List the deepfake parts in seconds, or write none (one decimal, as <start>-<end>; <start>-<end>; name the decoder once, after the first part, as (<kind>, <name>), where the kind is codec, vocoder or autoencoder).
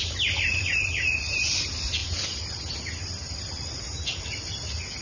none